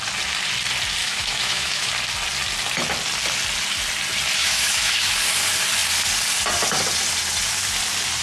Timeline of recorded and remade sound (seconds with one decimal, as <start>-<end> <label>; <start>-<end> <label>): 0.0-1.0 recorded; 1.0-1.9 remade; 1.9-4.4 recorded; 4.4-5.1 remade; 5.1-8.2 recorded